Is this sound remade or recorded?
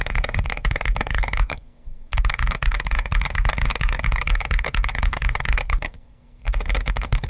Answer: remade